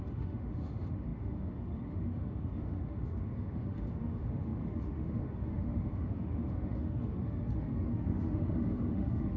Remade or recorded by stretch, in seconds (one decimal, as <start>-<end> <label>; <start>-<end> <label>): 0.0-9.4 remade